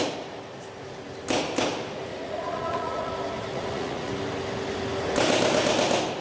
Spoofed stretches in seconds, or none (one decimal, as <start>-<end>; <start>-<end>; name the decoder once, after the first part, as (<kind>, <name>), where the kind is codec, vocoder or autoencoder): 2.1-3.1 (vocoder, Vocos); 3.5-4.1